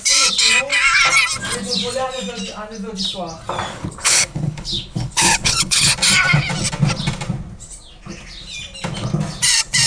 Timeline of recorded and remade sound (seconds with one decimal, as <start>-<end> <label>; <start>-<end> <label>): 0.0-3.7 recorded; 3.7-5.9 remade; 5.9-9.9 recorded